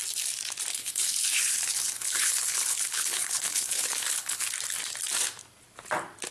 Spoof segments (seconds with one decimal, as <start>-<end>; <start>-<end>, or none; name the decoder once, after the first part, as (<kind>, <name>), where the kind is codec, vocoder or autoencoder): 0.7-4.5 (codec, HILCodec)